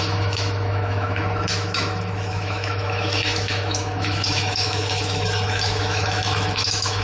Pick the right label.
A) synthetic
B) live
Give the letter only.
A